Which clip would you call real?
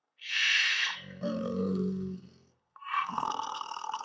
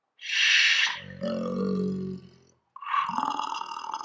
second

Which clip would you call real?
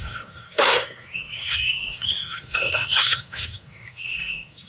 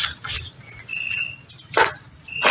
second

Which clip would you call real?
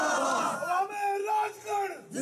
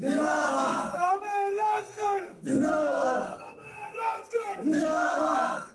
first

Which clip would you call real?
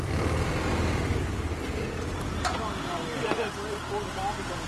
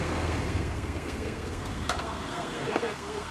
first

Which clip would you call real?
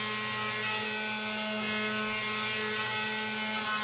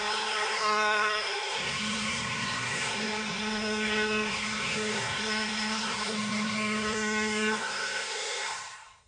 first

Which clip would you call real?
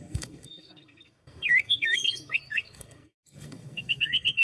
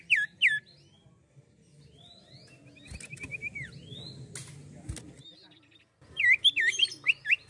second